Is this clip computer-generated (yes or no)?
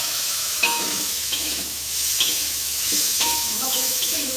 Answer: yes